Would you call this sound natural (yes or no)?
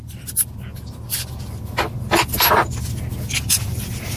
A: yes